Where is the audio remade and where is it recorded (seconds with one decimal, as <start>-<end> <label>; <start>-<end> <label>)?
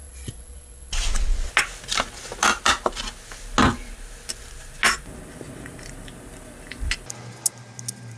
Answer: 0.0-1.5 remade; 1.5-8.2 recorded